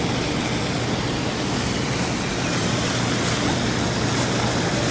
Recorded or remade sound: recorded